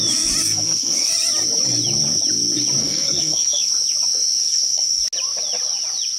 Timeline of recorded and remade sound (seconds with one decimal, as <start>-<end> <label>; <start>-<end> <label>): 0.0-0.4 recorded; 0.4-1.1 remade; 1.1-2.8 recorded; 2.8-3.7 remade; 3.7-4.4 recorded; 4.4-5.0 remade; 5.0-6.2 recorded